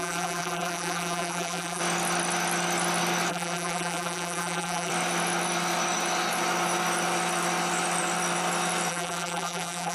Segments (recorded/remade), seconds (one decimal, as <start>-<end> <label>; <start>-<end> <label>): 0.0-1.8 remade; 1.8-3.3 recorded; 3.3-4.9 remade; 4.9-8.9 recorded; 8.9-9.9 remade